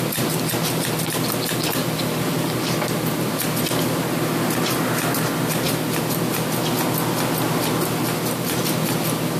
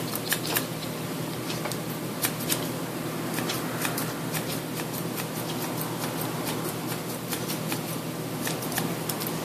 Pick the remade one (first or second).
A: second